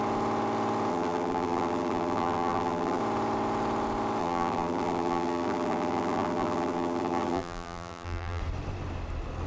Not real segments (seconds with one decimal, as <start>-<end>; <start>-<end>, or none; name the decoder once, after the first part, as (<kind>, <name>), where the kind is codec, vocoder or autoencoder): 0.9-3.0 (vocoder, BigVGAN v2); 4.2-8.4